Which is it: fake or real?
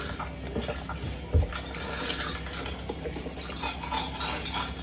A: real